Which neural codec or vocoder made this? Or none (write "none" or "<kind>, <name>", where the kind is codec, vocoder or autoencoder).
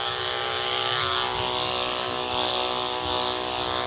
codec, DAC